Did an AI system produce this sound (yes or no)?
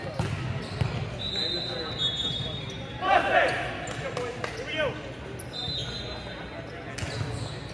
no